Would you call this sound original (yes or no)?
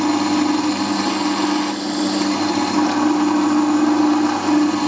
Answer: yes